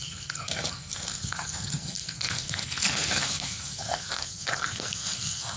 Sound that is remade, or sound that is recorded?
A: remade